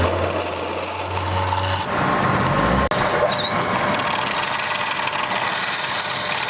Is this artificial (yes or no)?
no